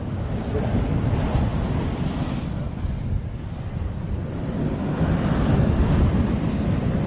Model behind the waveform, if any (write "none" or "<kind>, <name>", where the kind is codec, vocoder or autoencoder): none